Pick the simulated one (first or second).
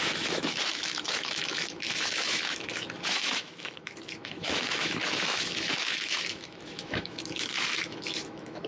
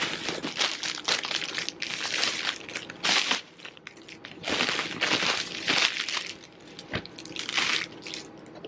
first